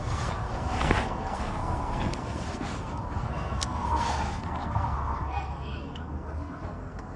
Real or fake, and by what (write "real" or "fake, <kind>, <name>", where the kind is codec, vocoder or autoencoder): fake, codec, SNAC